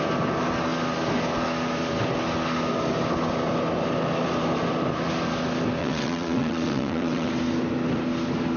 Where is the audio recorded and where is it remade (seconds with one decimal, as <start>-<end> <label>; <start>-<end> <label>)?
0.0-5.8 recorded; 5.8-7.3 remade; 7.3-8.6 recorded